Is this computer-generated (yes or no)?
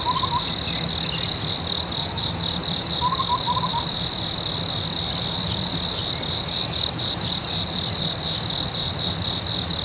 no